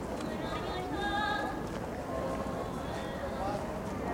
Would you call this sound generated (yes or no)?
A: no